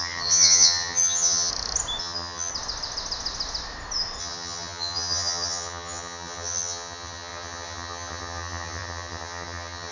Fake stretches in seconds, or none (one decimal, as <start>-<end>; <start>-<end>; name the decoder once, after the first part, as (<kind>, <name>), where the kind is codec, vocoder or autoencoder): 0.0-1.5 (vocoder, HiFi-GAN); 2.0-2.5; 4.2-9.9